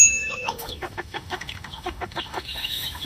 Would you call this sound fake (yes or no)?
yes